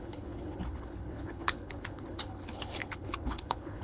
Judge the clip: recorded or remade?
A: remade